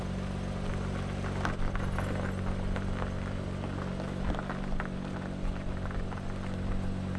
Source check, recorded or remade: recorded